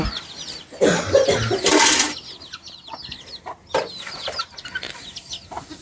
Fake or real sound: real